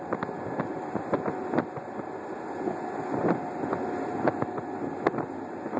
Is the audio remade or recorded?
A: recorded